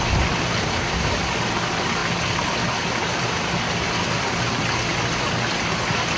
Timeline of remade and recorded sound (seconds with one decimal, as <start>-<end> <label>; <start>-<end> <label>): 0.0-6.2 recorded